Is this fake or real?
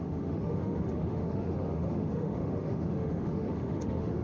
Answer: fake